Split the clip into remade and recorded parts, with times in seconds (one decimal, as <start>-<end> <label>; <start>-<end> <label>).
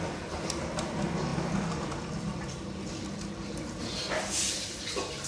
0.0-5.3 recorded